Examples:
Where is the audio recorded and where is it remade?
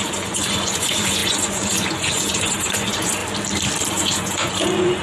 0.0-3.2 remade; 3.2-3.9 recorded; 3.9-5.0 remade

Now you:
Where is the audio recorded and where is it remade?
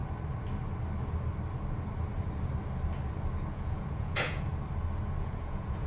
0.0-3.5 recorded; 3.5-4.5 remade; 4.5-5.2 recorded; 5.2-5.9 remade